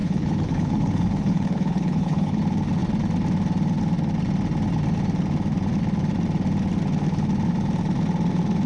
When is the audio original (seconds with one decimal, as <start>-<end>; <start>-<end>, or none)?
2.4-8.7